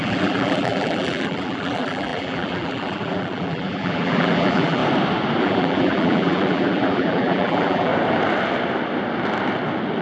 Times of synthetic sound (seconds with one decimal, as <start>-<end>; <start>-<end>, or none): 0.0-4.8; 5.4-7.9